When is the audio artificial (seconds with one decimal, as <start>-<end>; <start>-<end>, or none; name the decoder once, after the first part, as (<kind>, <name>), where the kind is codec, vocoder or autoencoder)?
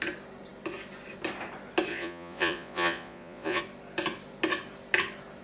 1.9-3.6 (vocoder, Vocos)